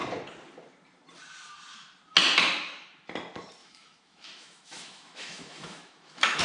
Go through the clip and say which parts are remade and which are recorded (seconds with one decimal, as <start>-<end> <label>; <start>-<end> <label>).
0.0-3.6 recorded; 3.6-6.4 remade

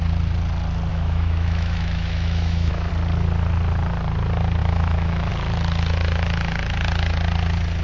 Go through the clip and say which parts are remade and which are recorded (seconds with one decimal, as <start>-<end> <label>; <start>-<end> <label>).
0.0-0.9 recorded; 0.9-2.9 remade; 2.9-4.6 recorded; 4.6-5.3 remade; 5.3-7.8 recorded

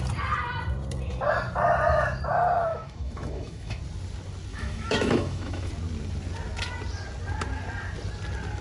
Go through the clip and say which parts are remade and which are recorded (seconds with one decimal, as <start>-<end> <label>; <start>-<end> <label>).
0.0-2.7 recorded; 2.7-3.8 remade; 3.8-4.5 recorded; 4.5-5.7 remade; 5.7-8.6 recorded